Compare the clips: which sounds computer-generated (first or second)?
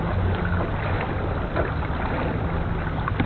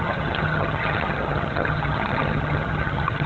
second